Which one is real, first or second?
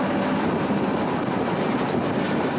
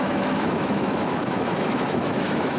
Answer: first